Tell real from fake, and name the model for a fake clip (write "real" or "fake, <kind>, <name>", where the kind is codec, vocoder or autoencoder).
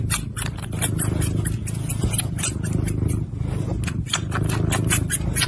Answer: real